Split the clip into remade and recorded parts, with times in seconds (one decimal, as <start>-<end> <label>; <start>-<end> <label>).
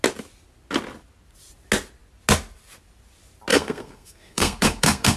0.0-3.5 recorded; 3.5-5.2 remade